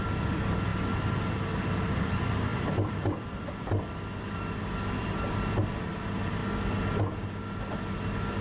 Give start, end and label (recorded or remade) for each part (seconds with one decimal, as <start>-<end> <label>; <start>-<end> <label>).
0.0-0.7 remade; 0.7-1.5 recorded; 1.5-6.4 remade; 6.4-8.4 recorded